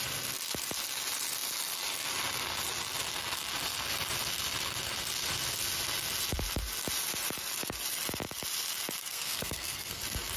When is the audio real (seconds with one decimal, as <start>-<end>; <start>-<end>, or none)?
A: 0.0-9.0; 10.0-10.4